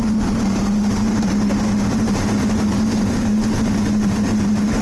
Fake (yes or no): yes